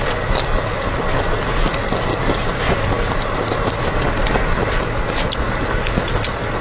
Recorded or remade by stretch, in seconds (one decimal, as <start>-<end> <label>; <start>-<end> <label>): 0.0-6.6 recorded